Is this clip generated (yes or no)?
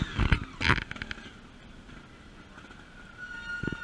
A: no